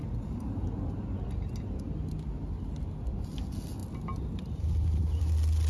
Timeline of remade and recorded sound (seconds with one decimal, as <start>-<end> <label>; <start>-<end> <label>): 0.0-5.7 recorded